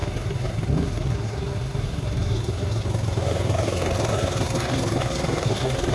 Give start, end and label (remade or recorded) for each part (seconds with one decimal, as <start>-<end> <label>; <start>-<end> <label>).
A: 0.0-5.9 remade